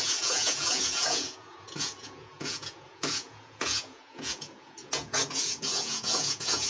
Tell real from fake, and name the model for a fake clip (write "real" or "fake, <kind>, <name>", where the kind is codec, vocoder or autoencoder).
fake, vocoder, Vocos